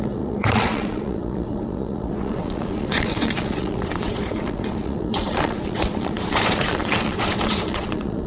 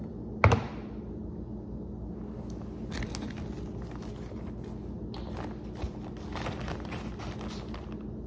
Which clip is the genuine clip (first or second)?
second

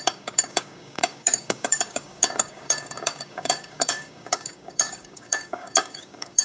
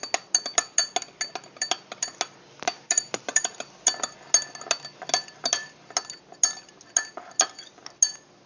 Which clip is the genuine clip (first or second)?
second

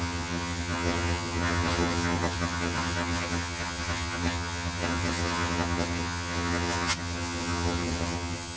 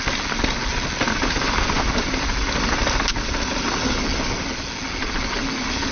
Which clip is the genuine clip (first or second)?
second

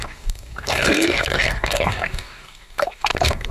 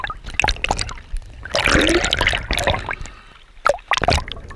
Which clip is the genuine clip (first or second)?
second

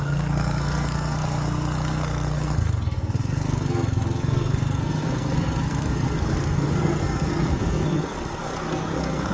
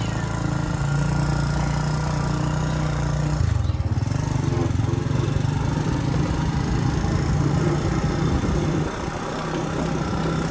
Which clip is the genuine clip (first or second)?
second